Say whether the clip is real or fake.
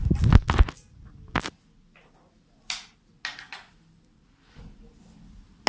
real